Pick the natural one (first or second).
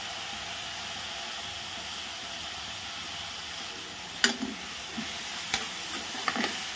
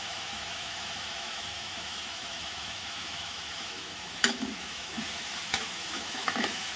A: first